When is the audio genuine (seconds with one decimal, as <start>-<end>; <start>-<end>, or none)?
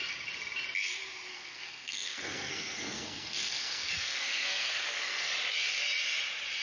0.0-1.3; 5.3-6.6